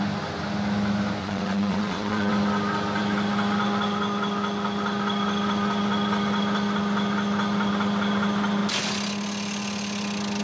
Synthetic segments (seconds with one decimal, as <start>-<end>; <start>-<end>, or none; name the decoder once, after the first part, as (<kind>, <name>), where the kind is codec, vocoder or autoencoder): 1.2-2.3 (vocoder, Vocos)